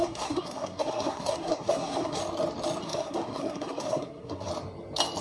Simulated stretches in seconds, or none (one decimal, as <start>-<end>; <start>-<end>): 0.0-2.2; 2.8-4.5